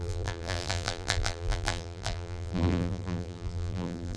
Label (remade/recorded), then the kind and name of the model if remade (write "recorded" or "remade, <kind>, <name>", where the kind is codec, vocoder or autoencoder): remade, vocoder, BigVGAN v2